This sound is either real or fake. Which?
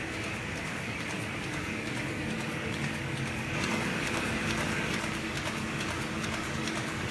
fake